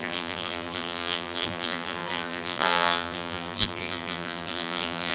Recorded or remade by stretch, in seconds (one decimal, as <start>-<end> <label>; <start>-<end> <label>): 0.0-5.1 remade